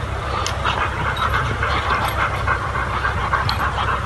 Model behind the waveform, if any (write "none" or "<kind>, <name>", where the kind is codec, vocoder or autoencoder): none